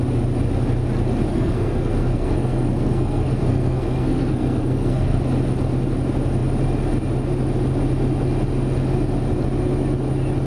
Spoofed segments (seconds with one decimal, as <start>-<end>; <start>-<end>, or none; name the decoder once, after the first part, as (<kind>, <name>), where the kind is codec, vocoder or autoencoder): 1.3-5.2 (codec, SNAC)